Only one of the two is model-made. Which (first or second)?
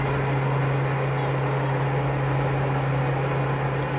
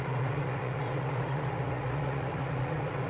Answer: second